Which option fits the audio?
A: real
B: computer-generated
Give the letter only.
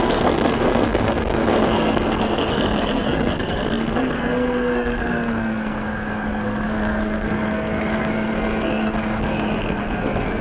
B